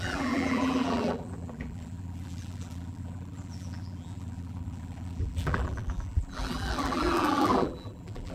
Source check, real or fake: fake